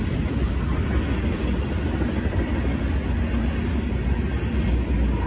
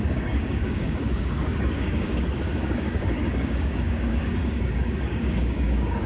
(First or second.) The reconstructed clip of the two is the second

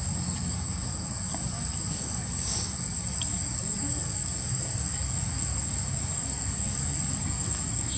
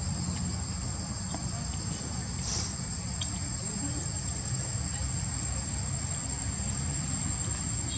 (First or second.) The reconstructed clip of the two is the first